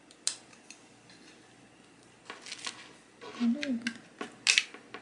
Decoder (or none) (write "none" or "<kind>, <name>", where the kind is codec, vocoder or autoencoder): none